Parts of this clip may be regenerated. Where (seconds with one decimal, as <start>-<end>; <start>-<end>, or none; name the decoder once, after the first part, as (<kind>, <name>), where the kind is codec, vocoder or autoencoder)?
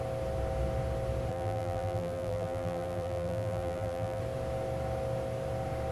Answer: 1.3-4.2 (vocoder, BigVGAN v2)